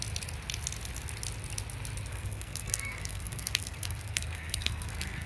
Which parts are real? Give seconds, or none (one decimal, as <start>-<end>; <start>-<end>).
0.0-2.1